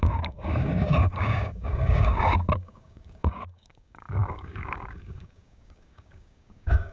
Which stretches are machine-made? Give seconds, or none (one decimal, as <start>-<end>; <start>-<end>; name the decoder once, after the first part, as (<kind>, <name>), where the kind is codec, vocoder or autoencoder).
0.0-6.9 (codec, DAC)

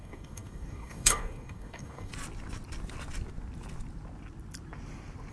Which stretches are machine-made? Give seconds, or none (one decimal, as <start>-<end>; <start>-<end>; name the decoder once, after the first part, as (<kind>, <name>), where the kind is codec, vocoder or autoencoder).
0.0-2.1 (codec, DAC)

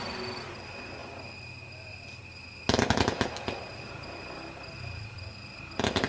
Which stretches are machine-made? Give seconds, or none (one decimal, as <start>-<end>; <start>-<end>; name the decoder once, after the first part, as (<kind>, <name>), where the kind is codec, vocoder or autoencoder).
none